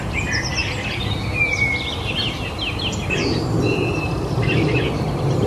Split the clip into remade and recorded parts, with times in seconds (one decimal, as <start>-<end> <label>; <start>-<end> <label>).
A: 0.0-5.5 recorded